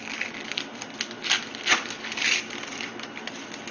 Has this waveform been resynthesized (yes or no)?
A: no